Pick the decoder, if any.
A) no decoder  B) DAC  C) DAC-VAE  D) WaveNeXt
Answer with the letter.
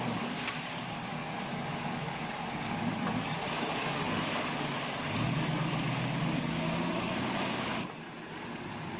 B